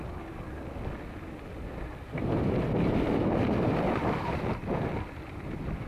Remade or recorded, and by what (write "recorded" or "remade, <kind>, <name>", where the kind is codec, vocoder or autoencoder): recorded